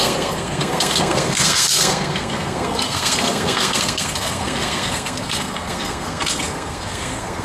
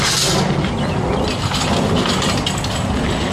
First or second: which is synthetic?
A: first